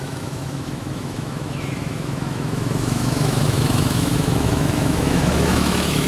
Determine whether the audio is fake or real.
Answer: fake